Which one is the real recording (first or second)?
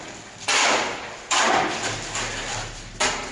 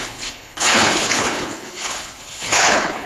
first